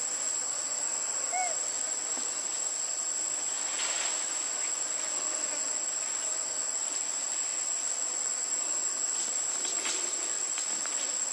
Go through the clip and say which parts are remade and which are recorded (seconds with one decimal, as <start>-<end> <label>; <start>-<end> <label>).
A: 0.0-11.3 recorded